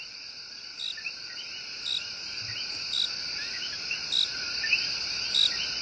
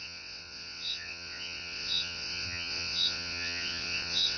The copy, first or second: second